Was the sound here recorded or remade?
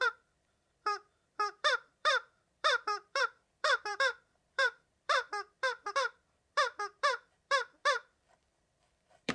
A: remade